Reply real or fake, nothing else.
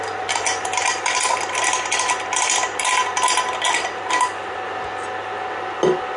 real